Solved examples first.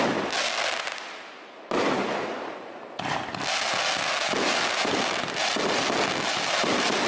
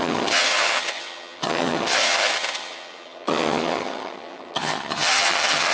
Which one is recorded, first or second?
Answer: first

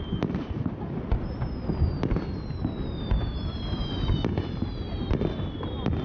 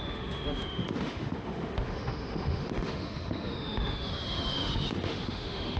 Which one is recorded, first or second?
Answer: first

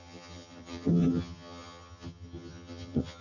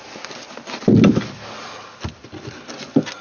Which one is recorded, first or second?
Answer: second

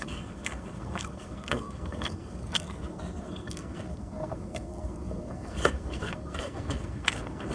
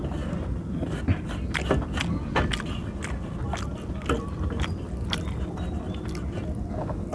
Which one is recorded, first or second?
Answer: second